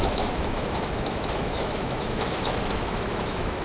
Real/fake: fake